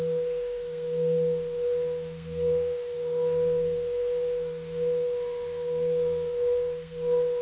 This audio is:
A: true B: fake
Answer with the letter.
B